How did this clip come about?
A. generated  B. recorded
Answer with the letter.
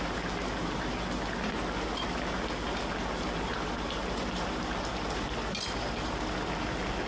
B